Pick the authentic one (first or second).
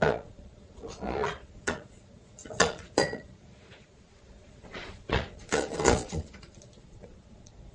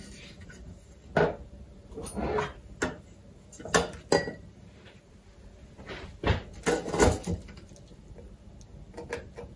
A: second